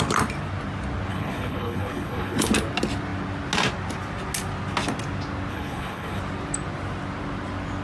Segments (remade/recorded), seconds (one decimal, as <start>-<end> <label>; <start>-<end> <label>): 0.0-1.1 recorded; 1.1-2.5 remade; 2.5-5.5 recorded; 5.5-6.2 remade; 6.2-7.8 recorded